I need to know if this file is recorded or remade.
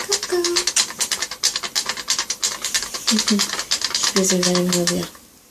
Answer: recorded